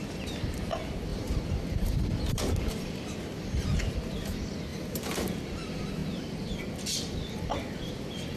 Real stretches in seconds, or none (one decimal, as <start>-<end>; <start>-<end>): 0.0-1.1; 2.5-4.7; 5.4-8.4